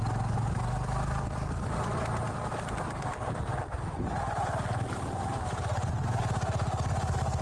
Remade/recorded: recorded